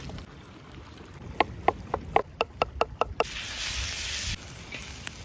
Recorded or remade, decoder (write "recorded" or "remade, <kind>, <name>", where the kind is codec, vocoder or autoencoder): recorded